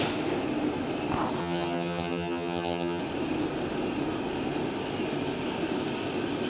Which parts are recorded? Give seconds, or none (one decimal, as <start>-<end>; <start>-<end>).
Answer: 0.0-1.4; 3.0-6.5